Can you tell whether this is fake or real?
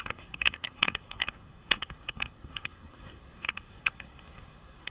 fake